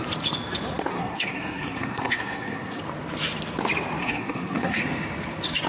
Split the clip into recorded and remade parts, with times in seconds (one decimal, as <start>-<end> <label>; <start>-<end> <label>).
0.0-0.9 recorded; 0.9-2.8 remade; 2.8-4.0 recorded; 4.0-4.8 remade; 4.8-5.7 recorded